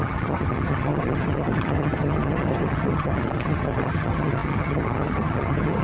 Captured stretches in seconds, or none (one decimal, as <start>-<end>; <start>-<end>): none